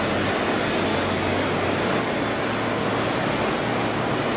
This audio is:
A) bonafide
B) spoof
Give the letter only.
A